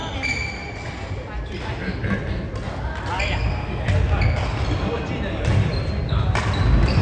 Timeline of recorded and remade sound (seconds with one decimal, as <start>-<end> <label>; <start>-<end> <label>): 0.0-7.0 recorded